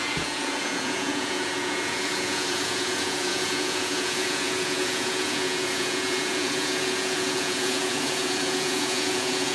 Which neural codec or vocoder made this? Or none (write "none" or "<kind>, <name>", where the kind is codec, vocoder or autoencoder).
vocoder, Vocos